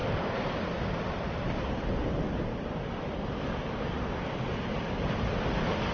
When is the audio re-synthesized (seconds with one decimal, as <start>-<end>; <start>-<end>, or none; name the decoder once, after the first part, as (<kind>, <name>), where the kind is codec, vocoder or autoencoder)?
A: none